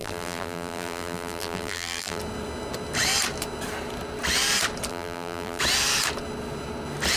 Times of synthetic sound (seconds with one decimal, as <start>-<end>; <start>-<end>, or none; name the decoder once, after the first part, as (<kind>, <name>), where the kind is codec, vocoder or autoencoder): 0.0-2.2 (vocoder, BigVGAN v2); 4.9-5.6